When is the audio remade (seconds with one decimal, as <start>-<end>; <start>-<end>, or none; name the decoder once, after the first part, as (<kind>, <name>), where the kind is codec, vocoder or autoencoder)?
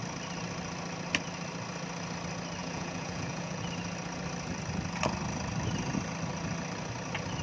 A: 2.6-3.6 (vocoder, Vocos)